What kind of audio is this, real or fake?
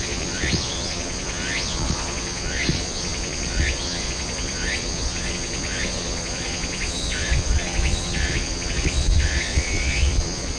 fake